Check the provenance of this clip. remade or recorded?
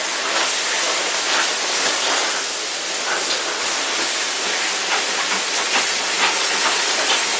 recorded